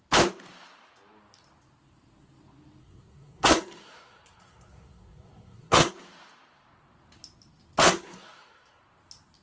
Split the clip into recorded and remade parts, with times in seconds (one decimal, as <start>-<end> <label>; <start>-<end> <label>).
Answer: 0.0-2.8 recorded; 2.8-5.9 remade; 5.9-7.8 recorded; 7.8-8.8 remade; 8.8-9.4 recorded